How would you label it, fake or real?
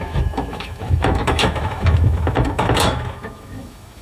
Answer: fake